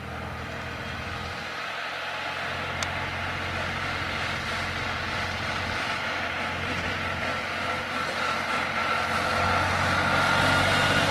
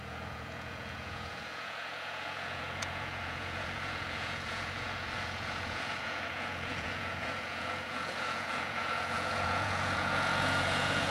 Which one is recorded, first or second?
first